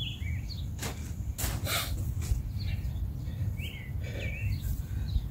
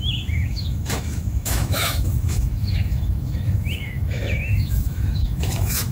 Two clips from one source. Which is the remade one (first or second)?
second